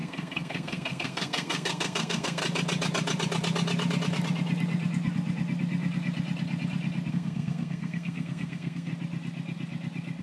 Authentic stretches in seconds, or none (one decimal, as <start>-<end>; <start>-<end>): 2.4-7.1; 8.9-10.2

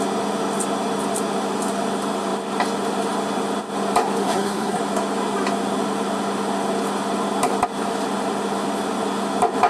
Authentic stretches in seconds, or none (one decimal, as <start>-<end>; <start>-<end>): 0.0-4.2; 4.8-9.7

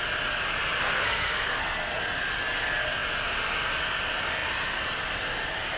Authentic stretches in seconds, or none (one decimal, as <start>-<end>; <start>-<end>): 0.0-0.8; 2.0-5.8